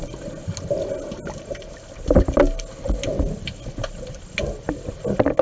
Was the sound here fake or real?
real